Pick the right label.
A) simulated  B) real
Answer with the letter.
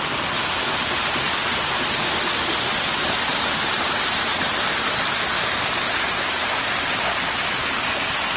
A